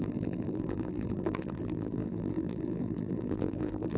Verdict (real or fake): fake